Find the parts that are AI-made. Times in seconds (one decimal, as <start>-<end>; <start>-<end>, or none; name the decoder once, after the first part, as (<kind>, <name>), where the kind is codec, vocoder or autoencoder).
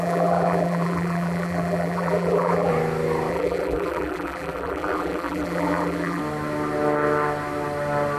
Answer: 0.0-2.7 (vocoder, BigVGAN v2); 3.3-6.2